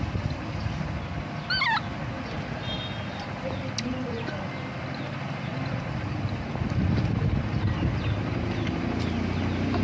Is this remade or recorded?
recorded